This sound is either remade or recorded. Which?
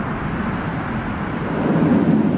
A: recorded